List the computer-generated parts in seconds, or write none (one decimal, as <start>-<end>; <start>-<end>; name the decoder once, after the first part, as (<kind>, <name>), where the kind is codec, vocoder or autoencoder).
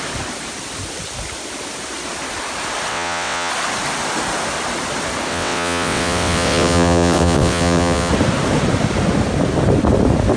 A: 2.9-3.5 (vocoder, WaveNeXt); 5.3-8.1